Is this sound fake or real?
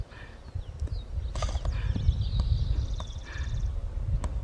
real